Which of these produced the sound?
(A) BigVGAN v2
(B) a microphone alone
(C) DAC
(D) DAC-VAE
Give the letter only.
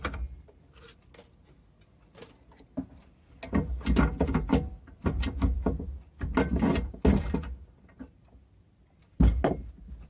B